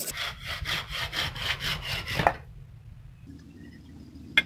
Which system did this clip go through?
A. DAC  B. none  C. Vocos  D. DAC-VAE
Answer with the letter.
B